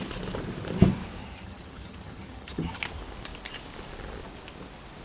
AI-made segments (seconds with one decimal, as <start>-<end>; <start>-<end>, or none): 1.2-2.8